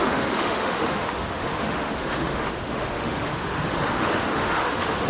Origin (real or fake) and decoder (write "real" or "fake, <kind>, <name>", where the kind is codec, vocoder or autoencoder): fake, autoencoder, DAC-VAE